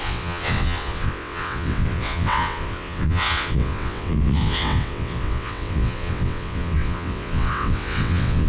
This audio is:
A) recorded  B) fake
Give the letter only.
B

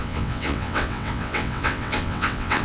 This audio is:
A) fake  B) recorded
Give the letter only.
A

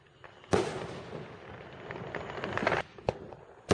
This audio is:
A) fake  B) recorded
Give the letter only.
B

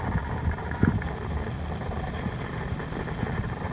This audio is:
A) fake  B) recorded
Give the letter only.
B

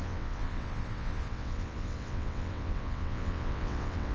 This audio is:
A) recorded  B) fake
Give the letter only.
B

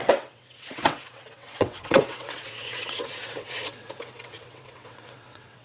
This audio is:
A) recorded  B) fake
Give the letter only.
B